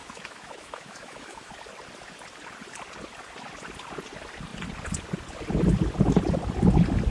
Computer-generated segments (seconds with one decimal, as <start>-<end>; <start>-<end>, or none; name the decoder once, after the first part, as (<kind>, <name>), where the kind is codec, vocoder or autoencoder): 0.0-1.5 (autoencoder, DAC-VAE)